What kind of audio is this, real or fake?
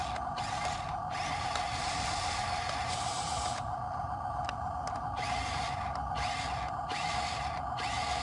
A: real